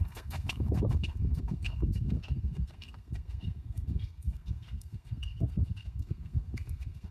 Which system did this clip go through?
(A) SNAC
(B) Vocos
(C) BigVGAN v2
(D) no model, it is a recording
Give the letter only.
A